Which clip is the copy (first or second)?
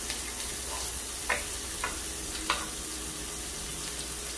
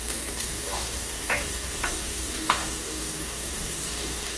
second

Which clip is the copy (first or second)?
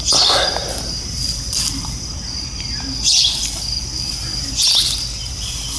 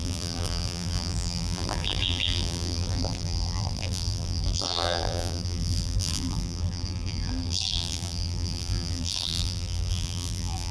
second